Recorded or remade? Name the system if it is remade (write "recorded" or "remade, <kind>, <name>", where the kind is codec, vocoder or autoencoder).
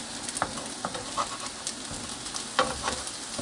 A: recorded